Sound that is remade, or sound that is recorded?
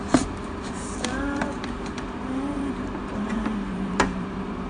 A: remade